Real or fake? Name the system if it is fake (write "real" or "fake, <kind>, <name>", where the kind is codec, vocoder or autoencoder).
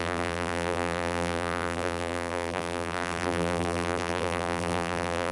fake, vocoder, BigVGAN v2